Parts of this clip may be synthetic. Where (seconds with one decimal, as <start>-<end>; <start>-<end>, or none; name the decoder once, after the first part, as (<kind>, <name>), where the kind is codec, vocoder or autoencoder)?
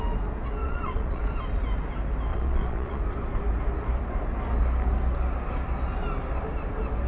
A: 0.6-1.2 (vocoder, Vocos); 2.3-3.0